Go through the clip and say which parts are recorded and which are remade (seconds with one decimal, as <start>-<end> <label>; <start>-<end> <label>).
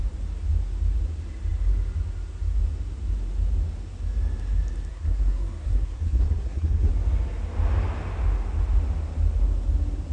0.0-4.9 recorded; 4.9-6.9 remade; 6.9-10.1 recorded